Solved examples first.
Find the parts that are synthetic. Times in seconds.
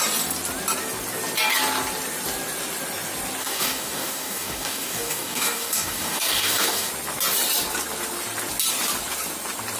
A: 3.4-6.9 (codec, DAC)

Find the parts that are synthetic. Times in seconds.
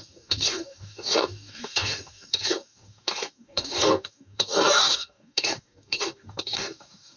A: 0.0-7.2 (codec, DAC)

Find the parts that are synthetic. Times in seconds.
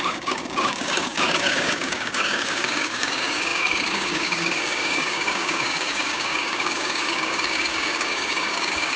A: 0.0-9.0 (codec, DAC)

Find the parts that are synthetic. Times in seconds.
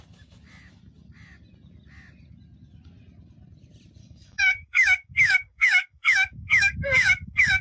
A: 4.0-7.6 (codec, DAC)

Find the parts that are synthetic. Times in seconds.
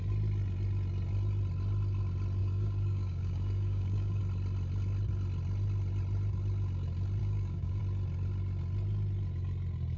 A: 2.4-4.2 (codec, DAC); 7.2-7.8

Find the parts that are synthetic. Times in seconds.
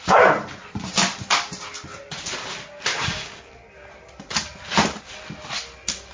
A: 2.9-3.5 (codec, DAC)